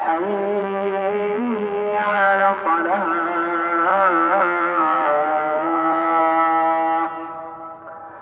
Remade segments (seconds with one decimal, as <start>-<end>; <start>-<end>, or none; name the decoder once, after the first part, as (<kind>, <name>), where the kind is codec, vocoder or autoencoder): 0.6-2.6 (vocoder, BigVGAN v2); 3.9-6.2